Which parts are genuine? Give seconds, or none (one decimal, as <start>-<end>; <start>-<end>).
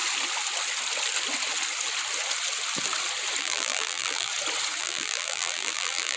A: 0.0-3.4; 4.3-4.8